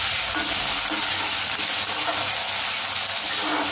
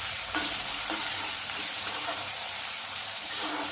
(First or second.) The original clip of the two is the first